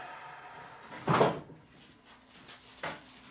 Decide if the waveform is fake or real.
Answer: real